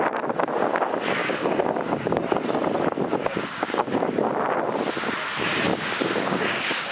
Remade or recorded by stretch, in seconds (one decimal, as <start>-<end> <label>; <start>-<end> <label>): 0.0-1.2 recorded; 1.2-2.2 remade; 2.2-3.2 recorded; 3.2-4.3 remade; 4.3-5.7 recorded; 5.7-6.9 remade